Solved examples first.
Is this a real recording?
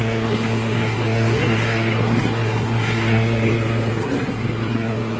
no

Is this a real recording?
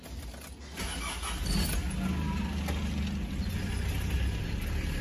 yes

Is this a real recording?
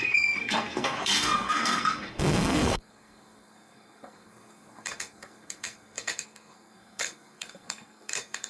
no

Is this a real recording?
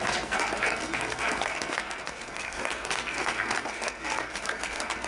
no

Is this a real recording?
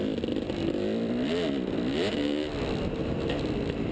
yes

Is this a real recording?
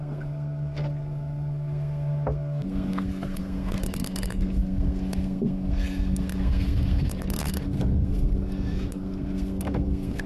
no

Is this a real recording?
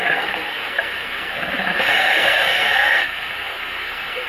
no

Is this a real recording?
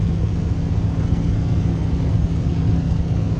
no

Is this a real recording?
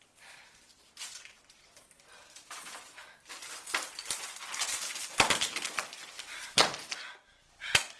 yes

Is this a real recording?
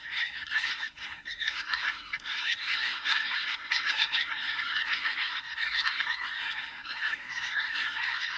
no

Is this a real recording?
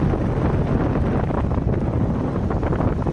yes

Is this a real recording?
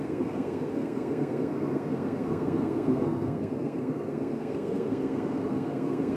no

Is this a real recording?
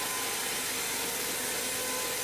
yes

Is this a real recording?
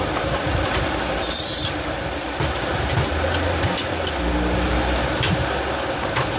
yes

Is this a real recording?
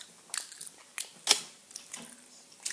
yes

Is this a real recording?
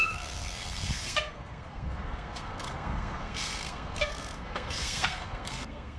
no